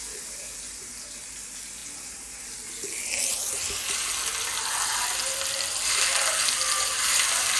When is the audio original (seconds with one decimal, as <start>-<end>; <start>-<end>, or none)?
0.0-7.6